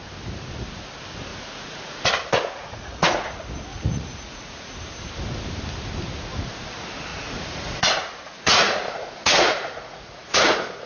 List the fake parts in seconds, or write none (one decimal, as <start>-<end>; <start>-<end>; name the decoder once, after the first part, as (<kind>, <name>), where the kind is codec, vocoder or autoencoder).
1.3-3.3 (vocoder, Vocos); 3.7-4.7; 7.1-10.9